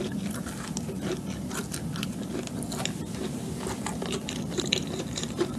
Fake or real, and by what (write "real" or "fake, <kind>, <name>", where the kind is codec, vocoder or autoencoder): fake, vocoder, BigVGAN v2